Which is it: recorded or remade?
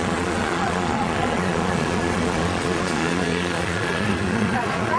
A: remade